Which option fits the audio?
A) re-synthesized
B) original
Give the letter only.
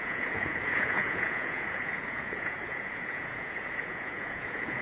A